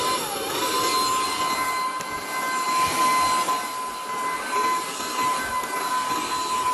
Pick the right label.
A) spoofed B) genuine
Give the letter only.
B